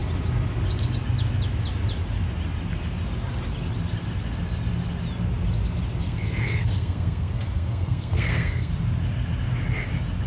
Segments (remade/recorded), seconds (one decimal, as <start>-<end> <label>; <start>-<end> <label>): 0.0-6.0 recorded; 6.0-8.7 remade; 8.7-10.3 recorded